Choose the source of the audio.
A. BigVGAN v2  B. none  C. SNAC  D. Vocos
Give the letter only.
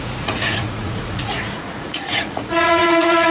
D